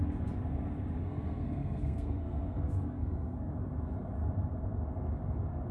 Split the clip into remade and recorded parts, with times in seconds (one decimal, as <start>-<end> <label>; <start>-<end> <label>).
0.0-1.0 recorded; 1.0-3.5 remade; 3.5-5.7 recorded